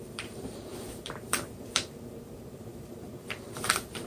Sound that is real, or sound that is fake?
fake